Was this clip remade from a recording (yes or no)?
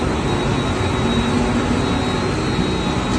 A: no